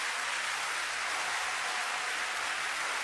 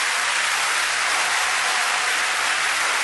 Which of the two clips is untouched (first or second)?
first